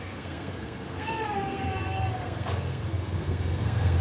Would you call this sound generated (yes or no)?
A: yes